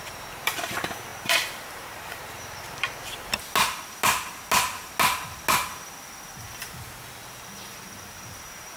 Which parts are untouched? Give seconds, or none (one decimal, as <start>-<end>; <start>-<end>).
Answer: 3.4-6.6